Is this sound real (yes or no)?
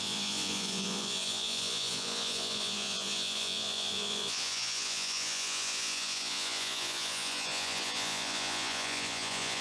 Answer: no